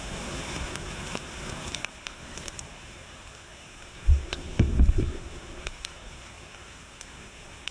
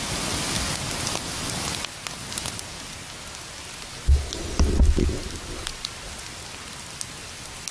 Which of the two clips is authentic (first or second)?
second